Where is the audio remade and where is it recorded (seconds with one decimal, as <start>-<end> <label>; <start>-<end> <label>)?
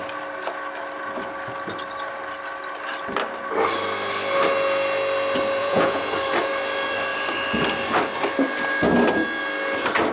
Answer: 0.0-5.6 recorded; 5.6-6.1 remade; 6.1-10.1 recorded